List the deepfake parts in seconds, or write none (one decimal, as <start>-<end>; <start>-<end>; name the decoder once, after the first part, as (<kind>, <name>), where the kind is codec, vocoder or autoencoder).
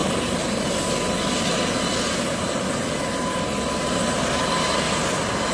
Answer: none